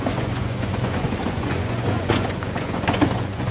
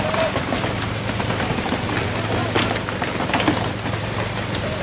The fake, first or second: first